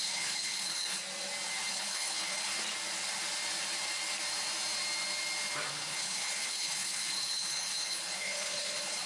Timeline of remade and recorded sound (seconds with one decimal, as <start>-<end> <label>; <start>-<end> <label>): 0.0-1.0 remade; 1.0-1.7 recorded; 1.7-2.5 remade; 2.5-5.7 recorded; 5.7-9.1 remade